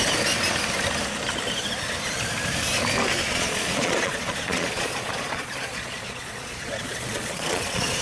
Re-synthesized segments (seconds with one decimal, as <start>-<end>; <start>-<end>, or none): 3.2-8.0